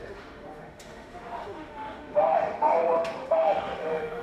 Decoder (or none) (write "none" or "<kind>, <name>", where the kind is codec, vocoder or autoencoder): autoencoder, DAC-VAE